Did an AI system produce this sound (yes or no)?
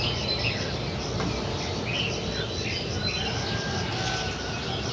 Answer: no